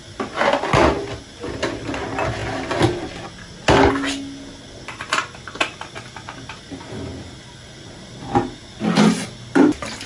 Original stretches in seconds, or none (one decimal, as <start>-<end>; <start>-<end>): 0.0-10.1